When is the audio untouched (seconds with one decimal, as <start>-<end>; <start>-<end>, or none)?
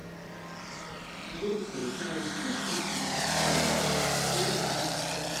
0.0-0.6